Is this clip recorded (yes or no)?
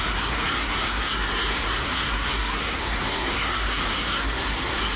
no